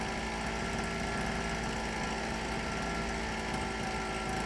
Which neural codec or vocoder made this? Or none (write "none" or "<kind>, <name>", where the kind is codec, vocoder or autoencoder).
none